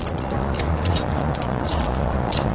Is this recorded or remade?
remade